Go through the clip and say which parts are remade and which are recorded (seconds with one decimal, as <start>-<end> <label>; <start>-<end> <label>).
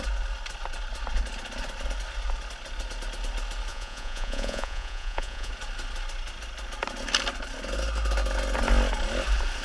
0.0-3.7 recorded; 3.7-5.5 remade; 5.5-9.6 recorded